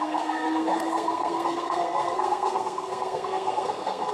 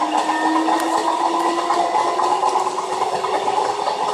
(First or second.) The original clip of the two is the second